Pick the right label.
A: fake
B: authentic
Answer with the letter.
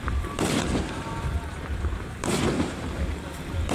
A